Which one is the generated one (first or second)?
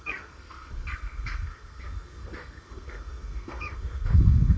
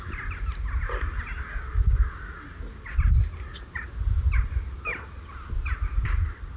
first